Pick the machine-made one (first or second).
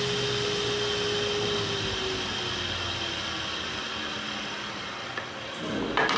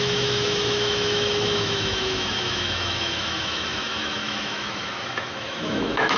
second